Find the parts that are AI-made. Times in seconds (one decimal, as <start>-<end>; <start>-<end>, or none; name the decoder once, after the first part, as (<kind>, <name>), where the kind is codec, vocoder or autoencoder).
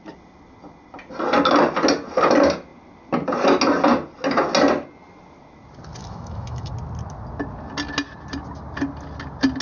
6.0-6.7 (autoencoder, DAC-VAE)